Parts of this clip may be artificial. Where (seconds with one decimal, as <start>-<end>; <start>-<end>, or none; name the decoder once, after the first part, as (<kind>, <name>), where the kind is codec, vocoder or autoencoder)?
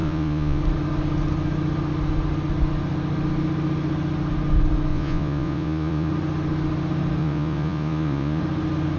0.0-0.6 (vocoder, Vocos); 4.9-6.1; 7.2-8.4